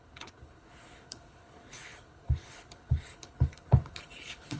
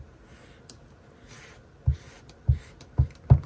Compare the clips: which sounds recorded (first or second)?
second